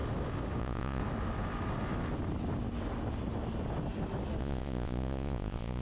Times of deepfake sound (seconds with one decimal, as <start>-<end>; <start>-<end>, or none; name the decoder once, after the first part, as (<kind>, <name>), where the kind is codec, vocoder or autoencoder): 0.6-1.0 (vocoder, Vocos); 4.4-5.8